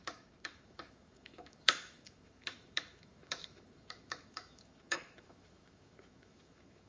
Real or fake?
fake